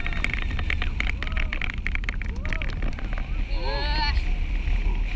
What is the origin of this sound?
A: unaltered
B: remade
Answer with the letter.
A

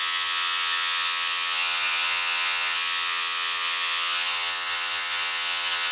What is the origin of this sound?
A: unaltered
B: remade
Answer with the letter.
B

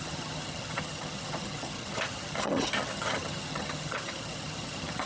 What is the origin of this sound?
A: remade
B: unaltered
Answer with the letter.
A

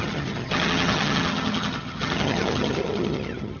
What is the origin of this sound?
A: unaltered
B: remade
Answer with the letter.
B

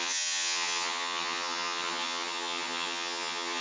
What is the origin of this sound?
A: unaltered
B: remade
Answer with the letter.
B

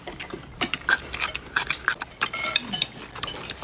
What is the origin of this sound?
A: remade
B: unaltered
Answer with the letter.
B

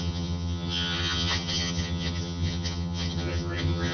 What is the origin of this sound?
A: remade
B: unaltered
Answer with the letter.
A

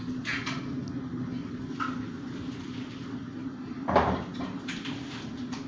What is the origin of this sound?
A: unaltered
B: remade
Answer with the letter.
A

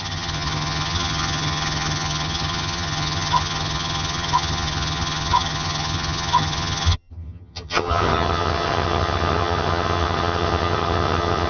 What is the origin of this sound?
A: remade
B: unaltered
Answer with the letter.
A